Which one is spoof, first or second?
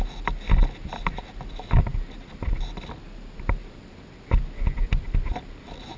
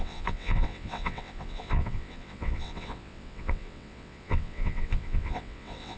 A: second